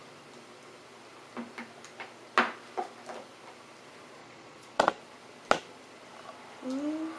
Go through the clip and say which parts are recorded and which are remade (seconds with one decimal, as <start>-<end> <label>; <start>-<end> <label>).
0.0-4.2 recorded; 4.2-5.0 remade; 5.0-7.2 recorded